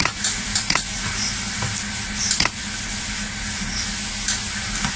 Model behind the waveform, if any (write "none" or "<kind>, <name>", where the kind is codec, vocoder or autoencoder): none